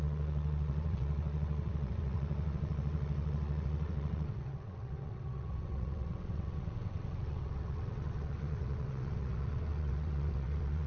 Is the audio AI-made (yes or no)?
yes